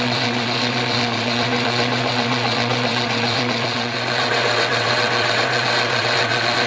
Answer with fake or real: fake